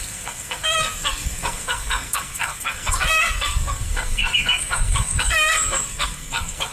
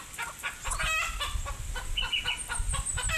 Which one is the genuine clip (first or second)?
second